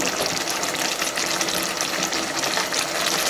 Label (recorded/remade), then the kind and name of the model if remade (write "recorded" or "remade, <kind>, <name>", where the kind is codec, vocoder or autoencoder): recorded